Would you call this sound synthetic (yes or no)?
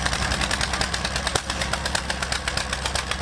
no